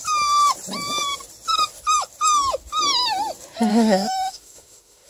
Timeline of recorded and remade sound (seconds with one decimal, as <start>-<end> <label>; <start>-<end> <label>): 0.0-3.7 recorded; 3.7-5.1 remade